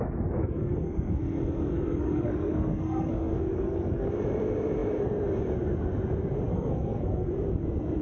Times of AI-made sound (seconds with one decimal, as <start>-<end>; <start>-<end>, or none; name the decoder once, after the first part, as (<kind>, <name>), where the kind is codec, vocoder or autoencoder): 0.4-1.2 (codec, SNAC); 1.7-4.1; 6.5-7.3